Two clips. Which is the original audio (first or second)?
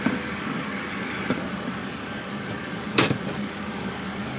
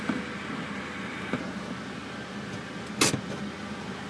second